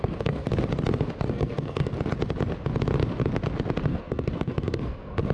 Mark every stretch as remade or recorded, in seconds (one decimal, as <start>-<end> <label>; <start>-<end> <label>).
0.0-0.5 remade; 0.5-1.2 recorded; 1.2-1.9 remade; 1.9-3.8 recorded; 3.8-5.3 remade